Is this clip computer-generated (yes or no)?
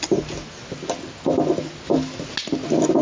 no